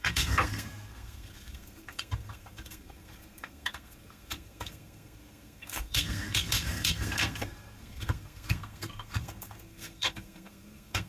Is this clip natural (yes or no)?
no